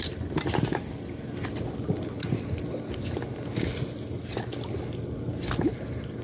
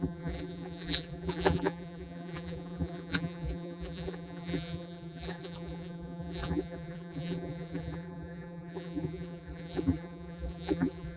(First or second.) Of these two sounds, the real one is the first